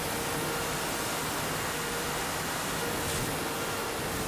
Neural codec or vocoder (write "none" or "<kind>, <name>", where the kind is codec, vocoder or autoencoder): none